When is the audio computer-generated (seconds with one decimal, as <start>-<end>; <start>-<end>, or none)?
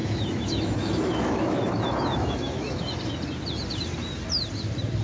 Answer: 0.0-3.0